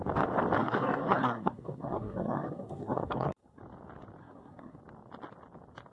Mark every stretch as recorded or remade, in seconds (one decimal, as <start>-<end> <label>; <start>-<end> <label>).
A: 0.0-0.6 recorded; 0.6-3.6 remade; 3.6-4.2 recorded; 4.2-4.8 remade; 4.8-5.9 recorded